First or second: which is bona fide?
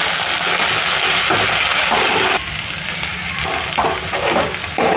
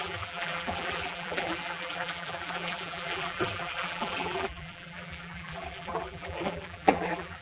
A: first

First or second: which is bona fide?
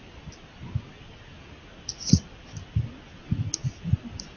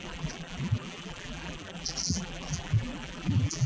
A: first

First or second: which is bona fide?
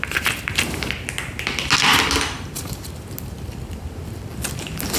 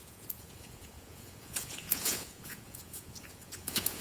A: first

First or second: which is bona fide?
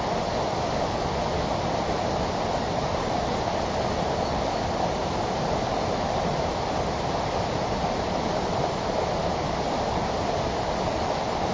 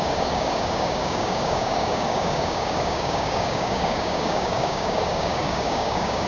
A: first